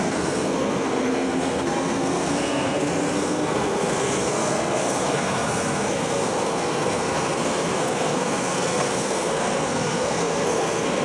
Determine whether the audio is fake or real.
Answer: fake